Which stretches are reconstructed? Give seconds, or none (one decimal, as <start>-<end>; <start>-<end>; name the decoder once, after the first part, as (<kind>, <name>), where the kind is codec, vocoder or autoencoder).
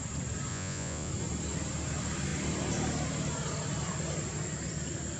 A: 0.5-1.1 (vocoder, Vocos)